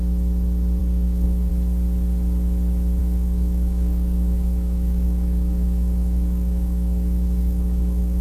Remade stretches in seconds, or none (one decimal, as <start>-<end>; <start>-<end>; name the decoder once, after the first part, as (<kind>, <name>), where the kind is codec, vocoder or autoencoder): 0.8-1.5 (codec, DAC); 3.0-8.2